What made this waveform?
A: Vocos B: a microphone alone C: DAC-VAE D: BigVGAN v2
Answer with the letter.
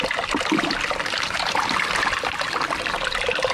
B